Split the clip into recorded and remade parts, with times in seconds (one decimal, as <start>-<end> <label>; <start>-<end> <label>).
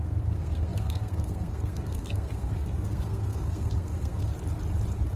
0.0-4.3 remade; 4.3-5.2 recorded